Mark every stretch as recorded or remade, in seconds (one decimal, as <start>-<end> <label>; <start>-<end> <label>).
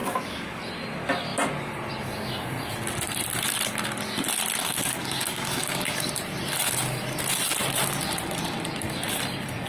0.0-0.6 remade; 0.6-4.6 recorded; 4.6-6.1 remade; 6.1-9.7 recorded